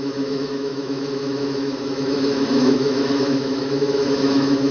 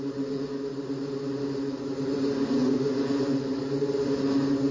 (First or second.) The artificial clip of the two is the first